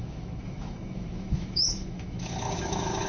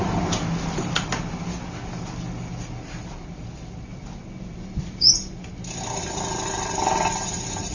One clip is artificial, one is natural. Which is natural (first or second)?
second